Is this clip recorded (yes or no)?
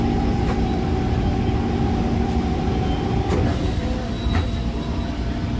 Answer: yes